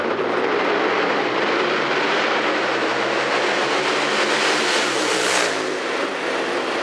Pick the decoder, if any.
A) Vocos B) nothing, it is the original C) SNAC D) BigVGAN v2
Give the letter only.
B